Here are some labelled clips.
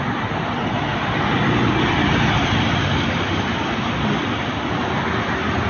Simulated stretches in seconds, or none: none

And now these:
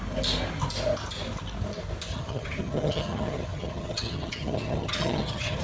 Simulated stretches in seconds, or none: 2.1-5.6 (vocoder, HiFi-GAN)